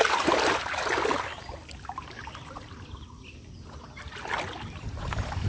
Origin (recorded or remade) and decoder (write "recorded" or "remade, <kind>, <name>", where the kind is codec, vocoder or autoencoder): recorded